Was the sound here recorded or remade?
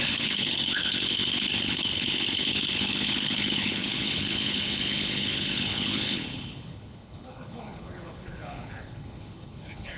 remade